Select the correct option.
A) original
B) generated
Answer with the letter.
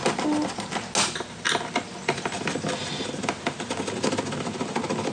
A